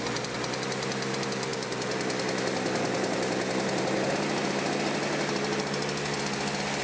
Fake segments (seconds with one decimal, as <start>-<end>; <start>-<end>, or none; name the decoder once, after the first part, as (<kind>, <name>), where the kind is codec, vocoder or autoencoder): none